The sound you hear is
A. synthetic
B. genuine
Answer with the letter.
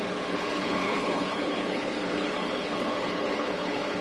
A